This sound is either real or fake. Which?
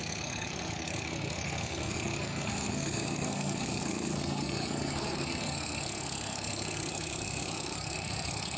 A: fake